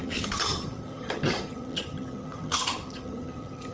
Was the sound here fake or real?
fake